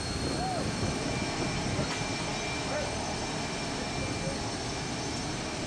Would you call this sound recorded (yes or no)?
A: yes